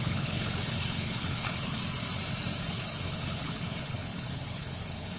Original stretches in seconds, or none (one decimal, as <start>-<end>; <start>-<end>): 1.8-2.7